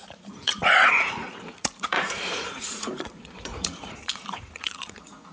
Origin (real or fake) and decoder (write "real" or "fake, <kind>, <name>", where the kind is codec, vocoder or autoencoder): fake, vocoder, Vocos